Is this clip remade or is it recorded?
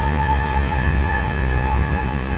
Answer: remade